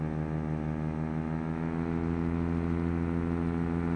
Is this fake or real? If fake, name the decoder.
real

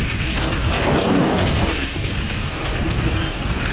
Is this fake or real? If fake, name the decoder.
fake, codec, DAC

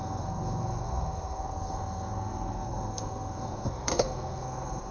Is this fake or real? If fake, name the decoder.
fake, codec, SNAC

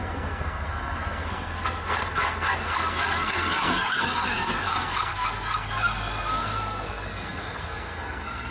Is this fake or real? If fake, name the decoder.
fake, codec, SNAC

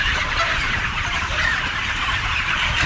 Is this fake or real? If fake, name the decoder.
fake, vocoder, BigVGAN v2